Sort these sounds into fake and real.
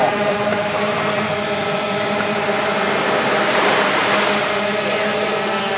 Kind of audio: fake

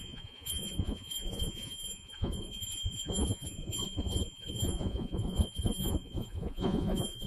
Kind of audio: fake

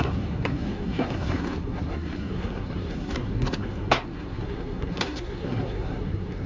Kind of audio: fake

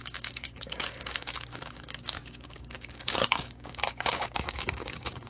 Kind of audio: fake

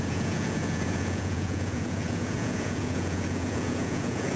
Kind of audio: fake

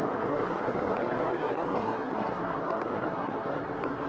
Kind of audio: fake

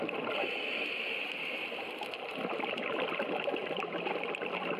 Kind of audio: real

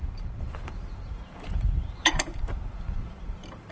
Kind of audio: fake